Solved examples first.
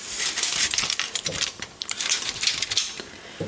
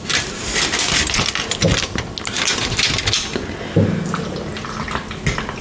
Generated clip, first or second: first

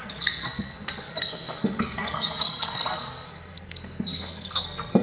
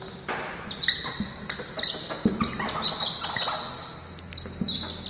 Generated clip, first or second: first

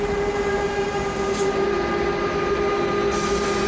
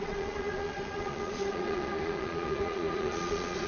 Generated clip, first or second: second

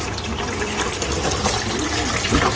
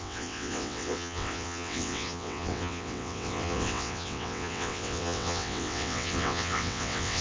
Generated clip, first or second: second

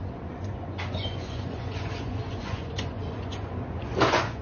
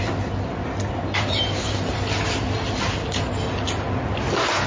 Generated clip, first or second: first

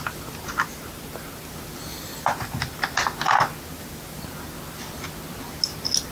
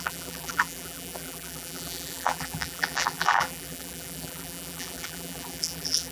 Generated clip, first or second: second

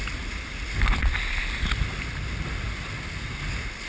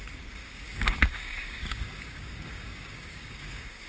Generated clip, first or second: second